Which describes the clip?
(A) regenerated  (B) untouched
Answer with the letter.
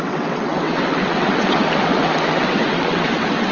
A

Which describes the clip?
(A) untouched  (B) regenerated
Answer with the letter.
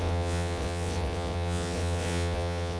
B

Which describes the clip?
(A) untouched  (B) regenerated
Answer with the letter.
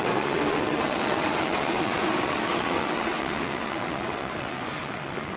B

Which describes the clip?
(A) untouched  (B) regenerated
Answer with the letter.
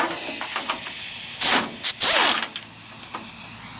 A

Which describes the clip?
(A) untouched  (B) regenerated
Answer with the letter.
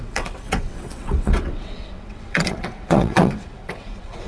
B